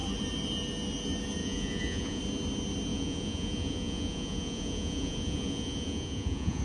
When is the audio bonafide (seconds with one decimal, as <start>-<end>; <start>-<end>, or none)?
0.0-1.4; 2.2-2.9